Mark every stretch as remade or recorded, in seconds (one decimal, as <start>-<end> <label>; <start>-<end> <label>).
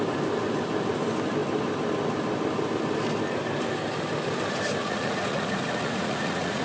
0.0-4.8 recorded; 4.8-6.6 remade